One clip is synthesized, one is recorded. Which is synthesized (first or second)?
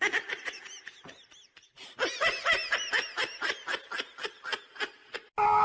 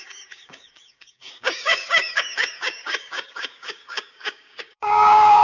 second